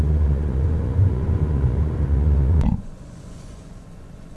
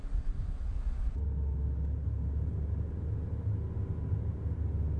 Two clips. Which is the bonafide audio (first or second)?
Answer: second